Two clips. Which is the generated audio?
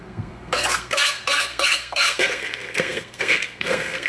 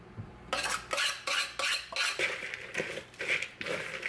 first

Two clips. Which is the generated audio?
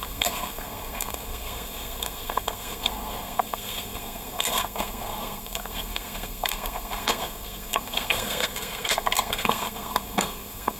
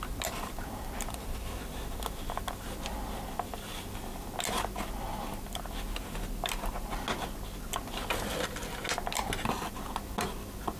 first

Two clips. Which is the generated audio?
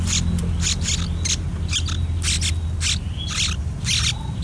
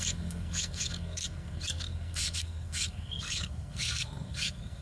second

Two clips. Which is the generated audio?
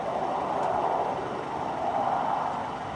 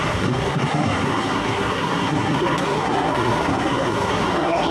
second